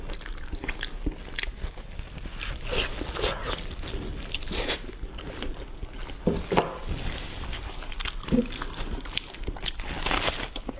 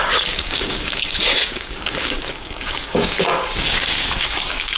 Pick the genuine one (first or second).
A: first